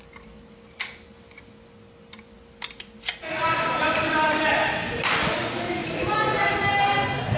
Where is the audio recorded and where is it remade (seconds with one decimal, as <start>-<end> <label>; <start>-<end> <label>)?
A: 0.0-3.8 recorded; 3.8-4.4 remade; 4.4-7.4 recorded